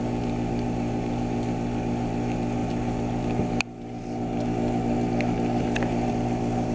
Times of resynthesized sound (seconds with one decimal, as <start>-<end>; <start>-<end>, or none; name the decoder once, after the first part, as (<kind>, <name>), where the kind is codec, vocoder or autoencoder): none